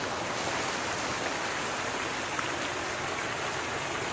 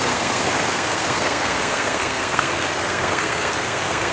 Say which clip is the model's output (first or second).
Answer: second